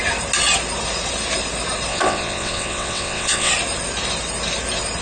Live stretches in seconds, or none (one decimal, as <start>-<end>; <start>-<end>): 0.0-1.9; 3.5-5.0